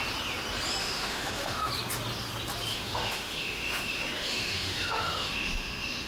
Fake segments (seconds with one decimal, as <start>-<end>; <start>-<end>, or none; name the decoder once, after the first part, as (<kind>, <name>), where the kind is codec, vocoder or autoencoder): 0.8-1.7 (autoencoder, DAC-VAE); 2.7-6.1